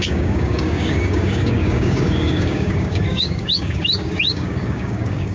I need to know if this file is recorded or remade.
remade